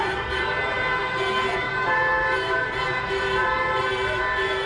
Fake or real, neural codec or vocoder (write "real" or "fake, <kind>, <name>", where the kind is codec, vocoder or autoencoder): fake, vocoder, BigVGAN v2